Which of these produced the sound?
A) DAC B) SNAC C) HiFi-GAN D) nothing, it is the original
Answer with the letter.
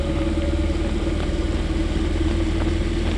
D